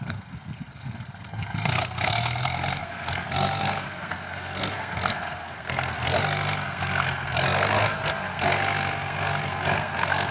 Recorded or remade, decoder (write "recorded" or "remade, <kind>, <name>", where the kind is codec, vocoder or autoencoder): remade, codec, SNAC